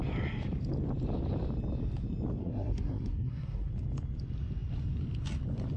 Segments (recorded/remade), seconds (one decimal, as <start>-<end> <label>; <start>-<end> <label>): 0.0-2.4 recorded; 2.4-3.7 remade; 3.7-5.8 recorded